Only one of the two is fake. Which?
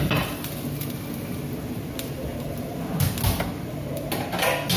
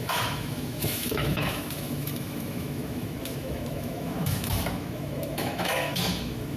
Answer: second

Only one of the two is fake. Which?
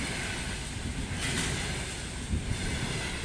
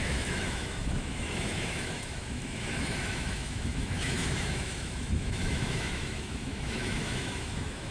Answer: second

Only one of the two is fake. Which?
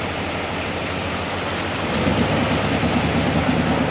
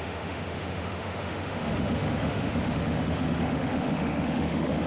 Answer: second